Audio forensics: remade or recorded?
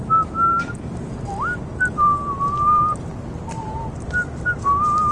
recorded